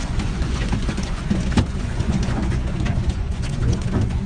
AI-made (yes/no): yes